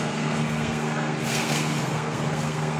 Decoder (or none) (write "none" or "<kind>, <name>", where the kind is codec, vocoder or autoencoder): codec, SNAC